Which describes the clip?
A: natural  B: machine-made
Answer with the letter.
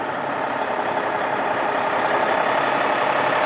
A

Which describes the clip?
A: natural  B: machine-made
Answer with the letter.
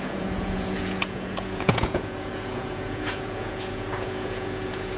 B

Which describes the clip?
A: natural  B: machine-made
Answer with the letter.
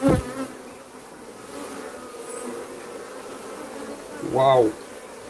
A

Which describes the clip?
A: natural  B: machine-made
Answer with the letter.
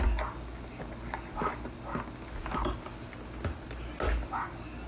A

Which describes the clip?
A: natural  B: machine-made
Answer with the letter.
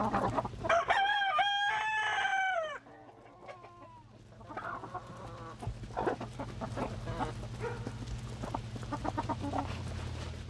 A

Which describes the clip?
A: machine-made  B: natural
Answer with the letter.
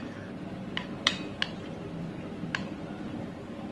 B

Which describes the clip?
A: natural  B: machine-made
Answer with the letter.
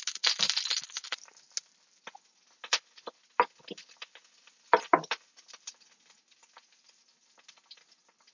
A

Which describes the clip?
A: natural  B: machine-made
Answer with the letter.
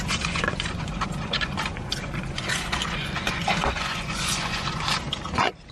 B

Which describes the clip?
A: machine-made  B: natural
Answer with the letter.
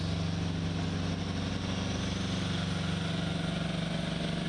B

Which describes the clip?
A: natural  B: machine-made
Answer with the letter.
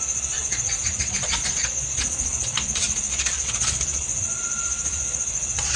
B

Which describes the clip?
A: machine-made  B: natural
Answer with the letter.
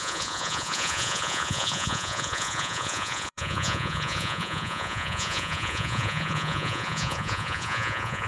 A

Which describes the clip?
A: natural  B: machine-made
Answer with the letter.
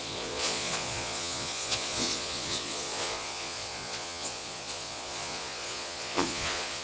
B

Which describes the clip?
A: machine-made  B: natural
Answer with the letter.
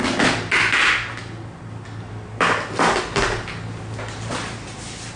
B